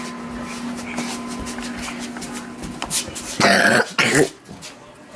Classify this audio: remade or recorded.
recorded